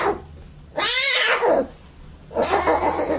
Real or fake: real